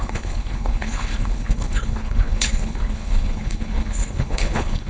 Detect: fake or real fake